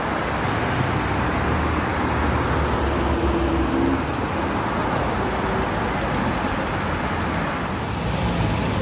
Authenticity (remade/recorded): recorded